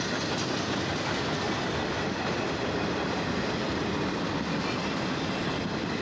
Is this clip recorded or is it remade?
recorded